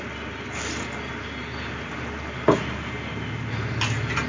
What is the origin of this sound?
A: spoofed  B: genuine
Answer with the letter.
B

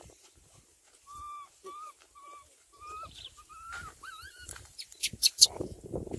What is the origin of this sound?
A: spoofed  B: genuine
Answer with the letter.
A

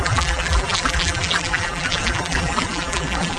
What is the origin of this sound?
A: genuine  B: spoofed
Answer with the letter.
B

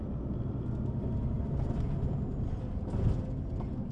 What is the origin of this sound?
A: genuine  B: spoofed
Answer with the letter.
A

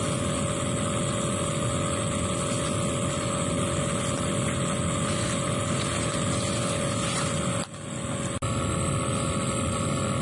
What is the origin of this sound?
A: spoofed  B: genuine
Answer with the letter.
B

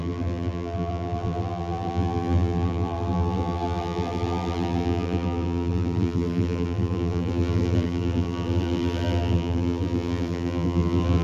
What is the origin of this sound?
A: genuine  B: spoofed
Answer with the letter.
B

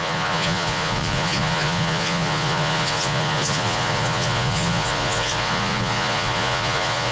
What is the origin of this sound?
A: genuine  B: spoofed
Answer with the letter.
B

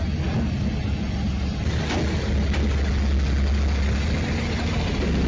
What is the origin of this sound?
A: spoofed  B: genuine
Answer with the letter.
B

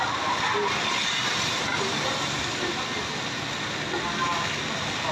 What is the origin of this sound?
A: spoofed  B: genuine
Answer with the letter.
B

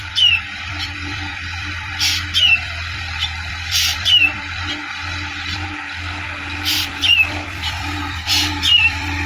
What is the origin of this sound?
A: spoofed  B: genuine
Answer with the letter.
A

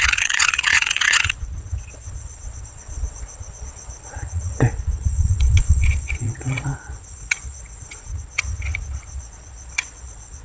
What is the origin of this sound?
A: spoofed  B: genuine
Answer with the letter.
A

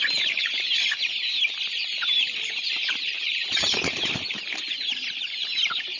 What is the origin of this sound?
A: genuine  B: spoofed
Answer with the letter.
B